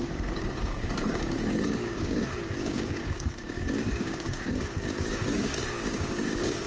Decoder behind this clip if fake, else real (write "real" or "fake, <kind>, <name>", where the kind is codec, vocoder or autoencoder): fake, codec, DAC